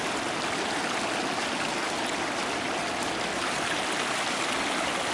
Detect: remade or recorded recorded